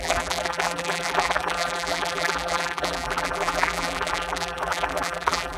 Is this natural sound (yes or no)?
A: no